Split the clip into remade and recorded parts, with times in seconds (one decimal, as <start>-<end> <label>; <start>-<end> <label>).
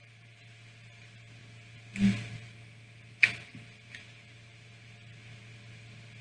0.0-6.2 recorded